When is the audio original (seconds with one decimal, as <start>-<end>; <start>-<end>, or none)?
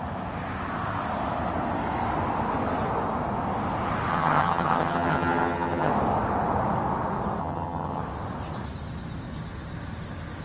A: 0.0-4.1; 5.9-7.4; 8.0-10.4